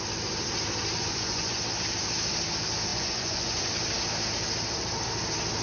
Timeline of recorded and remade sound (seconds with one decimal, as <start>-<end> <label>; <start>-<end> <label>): 0.0-1.0 recorded; 1.0-1.6 remade; 1.6-2.9 recorded; 2.9-3.7 remade; 3.7-5.6 recorded